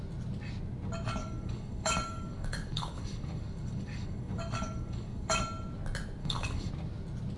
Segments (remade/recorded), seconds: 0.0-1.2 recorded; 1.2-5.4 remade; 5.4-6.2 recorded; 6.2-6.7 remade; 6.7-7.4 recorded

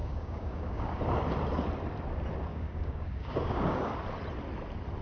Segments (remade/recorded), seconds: 0.0-1.0 remade; 1.0-2.5 recorded; 2.5-3.9 remade; 3.9-5.0 recorded

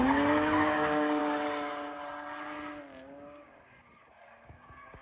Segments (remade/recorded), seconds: 0.0-1.2 remade; 1.2-4.2 recorded; 4.2-5.0 remade

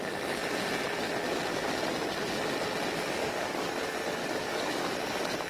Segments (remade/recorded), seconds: 0.0-3.2 recorded; 3.2-3.7 remade; 3.7-4.2 recorded; 4.2-4.9 remade; 4.9-5.5 recorded

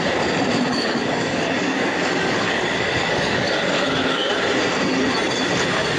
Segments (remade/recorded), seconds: 0.0-0.7 recorded; 0.7-4.3 remade; 4.3-6.0 recorded